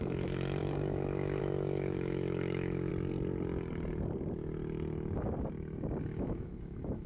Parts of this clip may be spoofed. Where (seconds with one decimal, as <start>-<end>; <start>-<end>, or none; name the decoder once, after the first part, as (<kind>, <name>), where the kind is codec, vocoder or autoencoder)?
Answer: 0.0-2.9 (autoencoder, DAC-VAE); 6.0-7.1